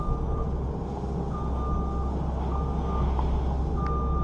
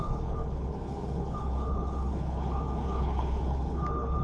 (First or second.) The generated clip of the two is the second